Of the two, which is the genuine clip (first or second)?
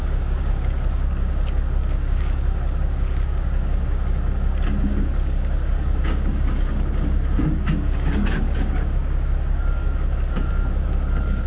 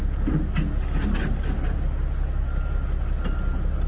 second